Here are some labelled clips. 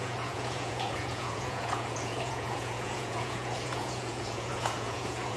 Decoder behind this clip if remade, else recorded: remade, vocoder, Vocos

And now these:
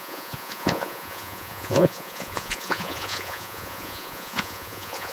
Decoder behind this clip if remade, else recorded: remade, vocoder, Vocos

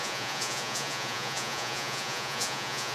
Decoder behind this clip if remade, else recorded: remade, vocoder, Vocos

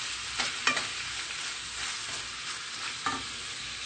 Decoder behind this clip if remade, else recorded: recorded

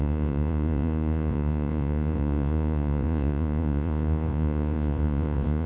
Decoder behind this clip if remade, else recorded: remade, vocoder, Vocos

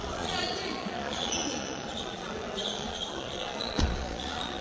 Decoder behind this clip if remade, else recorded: remade, vocoder, Vocos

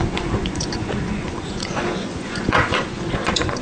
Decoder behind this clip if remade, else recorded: remade, vocoder, Vocos